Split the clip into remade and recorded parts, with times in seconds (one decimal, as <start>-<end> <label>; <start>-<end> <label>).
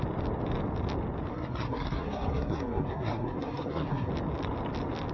0.0-1.3 recorded; 1.3-4.1 remade; 4.1-5.1 recorded